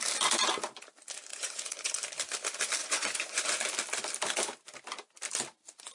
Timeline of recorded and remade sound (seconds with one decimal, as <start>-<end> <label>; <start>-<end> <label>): 0.0-1.3 recorded; 1.3-1.9 remade; 1.9-2.8 recorded; 2.8-3.6 remade; 3.6-5.9 recorded